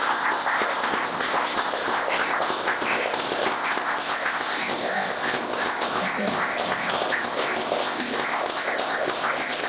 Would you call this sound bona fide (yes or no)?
no